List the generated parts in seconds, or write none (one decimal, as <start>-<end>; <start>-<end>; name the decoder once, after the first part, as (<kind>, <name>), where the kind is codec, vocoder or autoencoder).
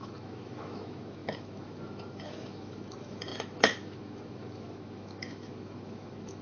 0.0-6.4 (autoencoder, DAC-VAE)